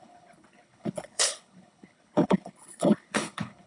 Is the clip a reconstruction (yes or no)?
yes